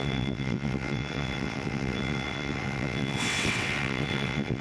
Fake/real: fake